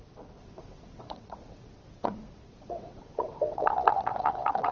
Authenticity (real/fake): fake